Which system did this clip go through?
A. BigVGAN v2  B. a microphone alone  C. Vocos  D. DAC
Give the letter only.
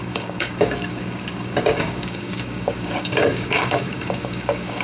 D